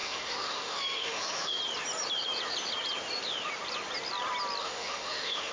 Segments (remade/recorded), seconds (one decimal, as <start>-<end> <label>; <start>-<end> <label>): 0.0-1.6 remade; 1.6-4.6 recorded; 4.6-5.5 remade